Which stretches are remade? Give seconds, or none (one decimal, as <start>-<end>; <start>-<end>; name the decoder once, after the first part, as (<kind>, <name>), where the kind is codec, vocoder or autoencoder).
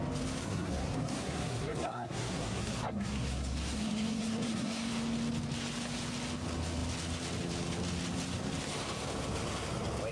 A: 0.4-4.9 (codec, SNAC)